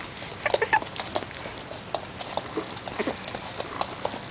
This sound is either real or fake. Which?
real